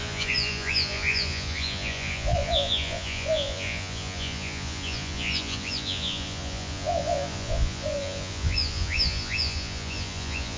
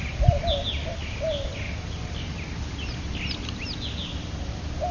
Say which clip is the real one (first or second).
second